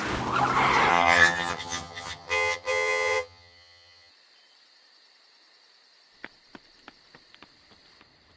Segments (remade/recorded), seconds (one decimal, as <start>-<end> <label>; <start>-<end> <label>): 0.0-0.9 recorded; 0.9-4.1 remade; 4.1-8.4 recorded